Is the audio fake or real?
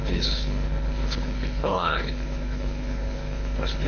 fake